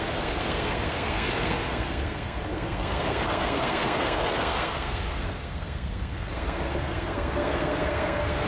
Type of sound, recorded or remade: remade